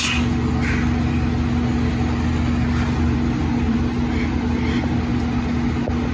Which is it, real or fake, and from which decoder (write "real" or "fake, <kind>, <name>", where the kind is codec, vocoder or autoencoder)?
real